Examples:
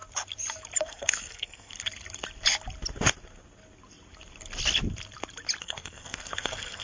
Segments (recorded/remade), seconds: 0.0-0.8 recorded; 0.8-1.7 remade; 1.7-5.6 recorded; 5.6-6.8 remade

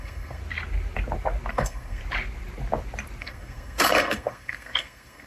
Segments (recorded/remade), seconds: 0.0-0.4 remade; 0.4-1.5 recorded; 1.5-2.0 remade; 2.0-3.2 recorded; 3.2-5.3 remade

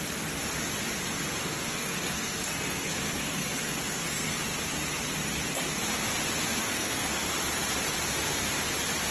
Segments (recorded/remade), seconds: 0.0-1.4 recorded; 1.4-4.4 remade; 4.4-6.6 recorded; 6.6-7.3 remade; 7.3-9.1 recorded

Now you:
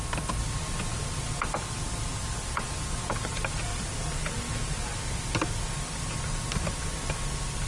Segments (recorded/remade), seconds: 0.0-7.7 recorded

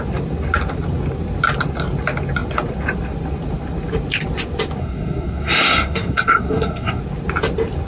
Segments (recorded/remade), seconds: 0.0-4.8 recorded; 4.8-7.0 remade; 7.0-7.9 recorded